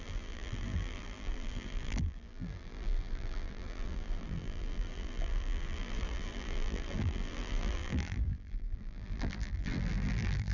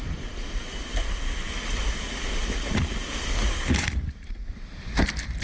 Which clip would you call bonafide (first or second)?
second